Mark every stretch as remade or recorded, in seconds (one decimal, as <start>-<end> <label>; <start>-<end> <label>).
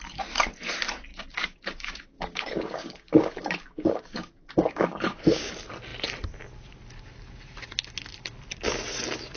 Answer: 0.0-1.1 recorded; 1.1-5.5 remade; 5.5-9.4 recorded